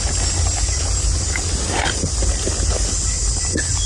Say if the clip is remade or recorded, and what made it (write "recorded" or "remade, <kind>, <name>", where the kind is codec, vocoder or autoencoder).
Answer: recorded